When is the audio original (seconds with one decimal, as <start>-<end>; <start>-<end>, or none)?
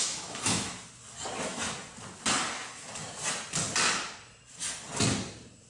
0.7-5.7